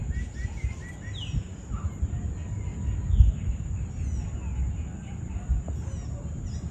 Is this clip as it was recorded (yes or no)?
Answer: yes